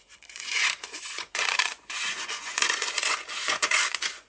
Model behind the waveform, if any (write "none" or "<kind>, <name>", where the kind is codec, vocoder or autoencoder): vocoder, Vocos